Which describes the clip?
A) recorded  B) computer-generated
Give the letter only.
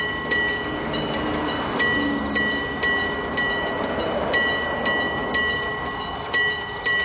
A